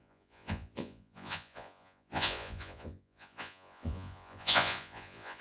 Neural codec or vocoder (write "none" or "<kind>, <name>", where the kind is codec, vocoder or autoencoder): vocoder, Vocos